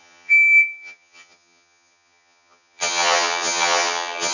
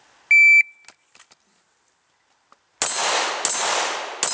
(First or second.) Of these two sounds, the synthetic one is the first